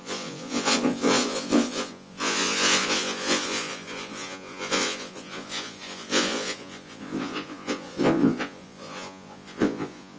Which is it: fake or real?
fake